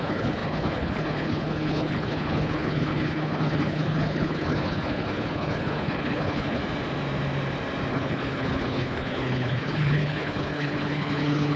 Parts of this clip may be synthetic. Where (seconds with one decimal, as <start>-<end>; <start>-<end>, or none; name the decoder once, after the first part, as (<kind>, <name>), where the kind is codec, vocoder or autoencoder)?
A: 0.0-6.6 (codec, HILCodec); 7.9-11.6